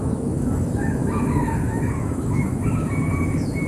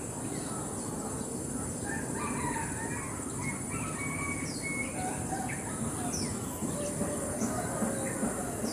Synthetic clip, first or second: first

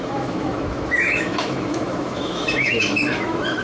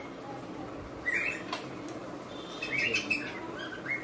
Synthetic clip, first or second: first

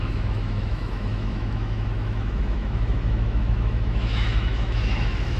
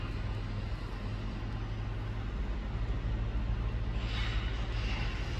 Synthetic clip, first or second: first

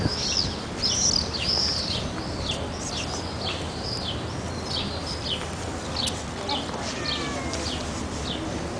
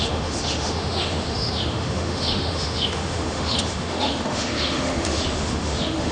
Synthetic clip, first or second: second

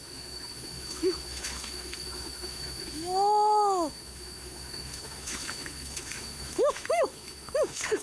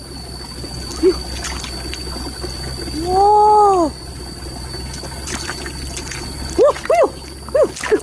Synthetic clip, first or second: first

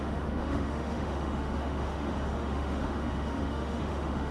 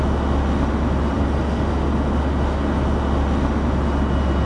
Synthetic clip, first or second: first